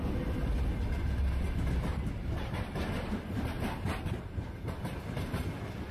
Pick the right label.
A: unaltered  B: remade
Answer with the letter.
A